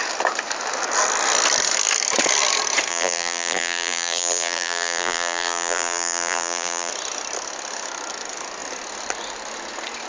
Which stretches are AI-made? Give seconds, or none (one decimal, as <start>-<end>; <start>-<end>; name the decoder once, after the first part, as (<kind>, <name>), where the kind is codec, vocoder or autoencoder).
2.9-6.9 (vocoder, BigVGAN v2)